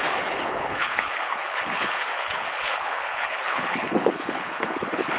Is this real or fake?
fake